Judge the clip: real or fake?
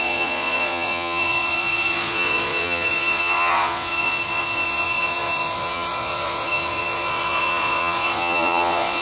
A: fake